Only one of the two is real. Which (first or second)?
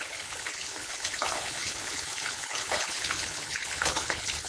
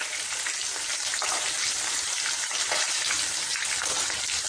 second